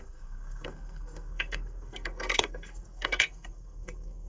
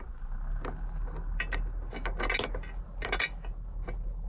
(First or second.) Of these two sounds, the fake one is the first